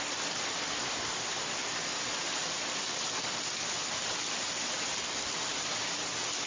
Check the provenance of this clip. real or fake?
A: real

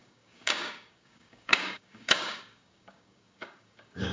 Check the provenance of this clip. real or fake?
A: fake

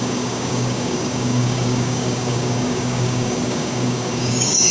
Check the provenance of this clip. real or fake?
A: fake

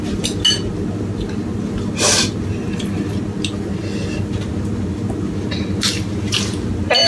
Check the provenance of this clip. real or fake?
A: real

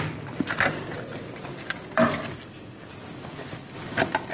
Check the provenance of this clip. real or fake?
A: real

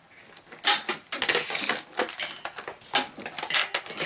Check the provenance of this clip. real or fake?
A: real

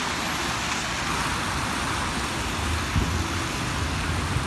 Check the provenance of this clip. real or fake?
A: real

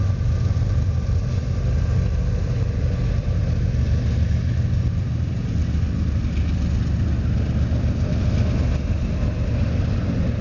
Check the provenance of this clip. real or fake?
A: real